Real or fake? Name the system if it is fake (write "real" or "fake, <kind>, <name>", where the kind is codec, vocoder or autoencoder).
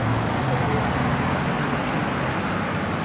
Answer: real